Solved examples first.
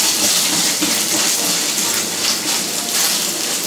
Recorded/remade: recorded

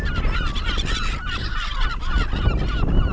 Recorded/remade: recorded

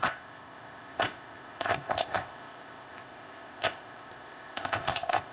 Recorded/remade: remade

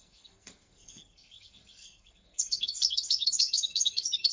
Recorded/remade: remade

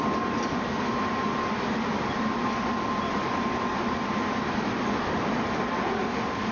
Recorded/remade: recorded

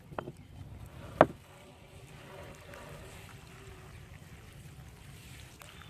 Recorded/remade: recorded